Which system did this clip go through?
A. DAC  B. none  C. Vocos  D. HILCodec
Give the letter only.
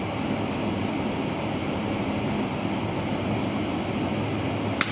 B